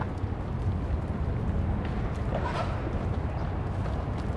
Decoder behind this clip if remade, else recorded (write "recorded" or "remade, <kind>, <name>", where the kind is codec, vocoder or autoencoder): recorded